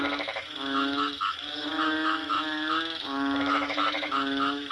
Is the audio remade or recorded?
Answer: remade